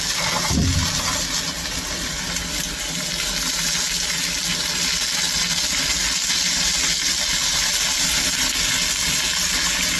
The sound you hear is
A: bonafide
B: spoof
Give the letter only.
A